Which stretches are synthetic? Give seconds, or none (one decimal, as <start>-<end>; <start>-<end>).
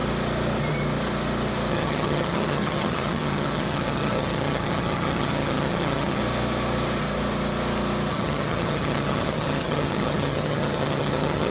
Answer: 1.7-6.2; 8.1-11.5